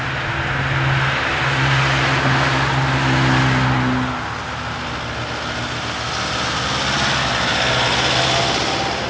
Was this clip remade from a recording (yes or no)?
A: no